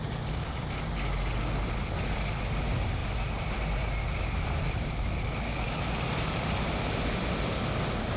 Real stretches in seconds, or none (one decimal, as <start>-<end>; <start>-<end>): 0.0-8.2